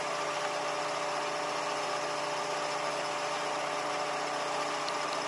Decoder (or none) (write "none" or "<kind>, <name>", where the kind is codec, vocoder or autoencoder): none